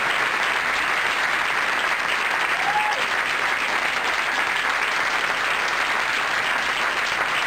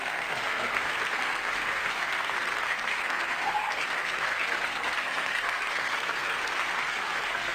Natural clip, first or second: first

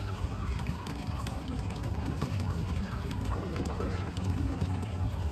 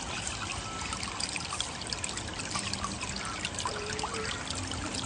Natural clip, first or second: second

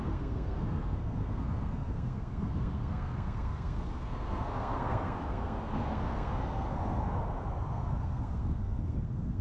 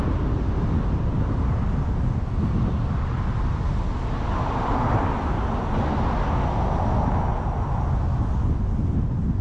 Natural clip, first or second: second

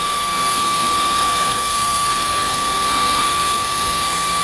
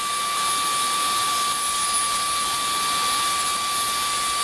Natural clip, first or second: second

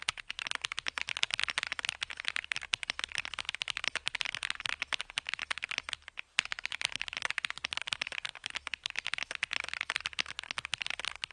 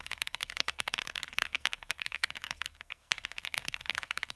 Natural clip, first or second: first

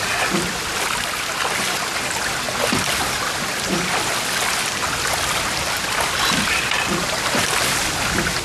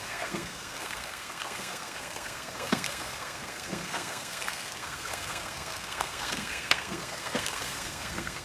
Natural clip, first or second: first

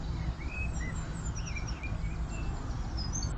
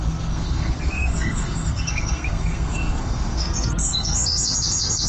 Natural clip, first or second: first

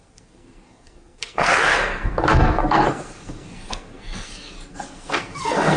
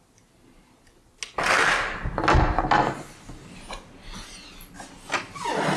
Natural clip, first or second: second